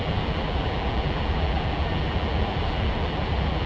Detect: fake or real fake